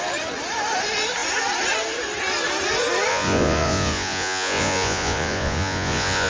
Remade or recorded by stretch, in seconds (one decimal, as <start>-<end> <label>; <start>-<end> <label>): 0.0-3.1 recorded; 3.1-6.3 remade